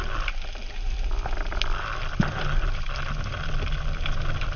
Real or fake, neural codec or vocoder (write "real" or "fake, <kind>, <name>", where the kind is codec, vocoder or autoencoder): real